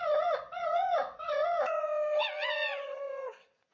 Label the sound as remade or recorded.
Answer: remade